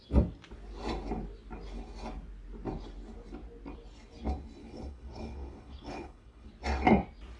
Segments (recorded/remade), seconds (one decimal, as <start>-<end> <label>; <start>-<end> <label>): 0.0-4.6 recorded; 4.6-6.5 remade; 6.5-7.4 recorded